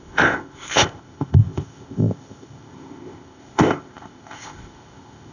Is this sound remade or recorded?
remade